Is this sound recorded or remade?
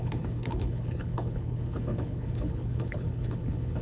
remade